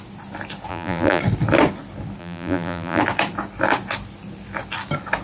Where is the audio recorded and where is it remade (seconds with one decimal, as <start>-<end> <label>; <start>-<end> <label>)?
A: 0.0-0.7 recorded; 0.7-1.2 remade; 1.2-2.2 recorded; 2.2-3.0 remade; 3.0-5.2 recorded

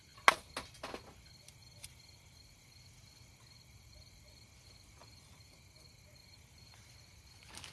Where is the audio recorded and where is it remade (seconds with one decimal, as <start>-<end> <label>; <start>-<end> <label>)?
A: 0.0-1.6 recorded; 1.6-2.4 remade; 2.4-5.0 recorded; 5.0-5.6 remade; 5.6-6.2 recorded; 6.2-6.8 remade; 6.8-7.7 recorded

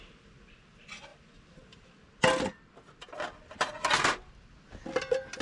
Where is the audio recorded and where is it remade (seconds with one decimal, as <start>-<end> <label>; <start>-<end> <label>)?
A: 0.0-5.4 recorded

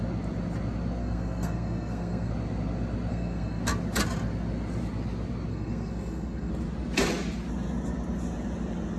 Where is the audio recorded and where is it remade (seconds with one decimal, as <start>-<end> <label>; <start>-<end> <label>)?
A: 0.0-1.0 recorded; 1.0-2.3 remade; 2.3-3.1 recorded; 3.1-3.6 remade; 3.6-5.5 recorded; 5.5-6.5 remade; 6.5-9.0 recorded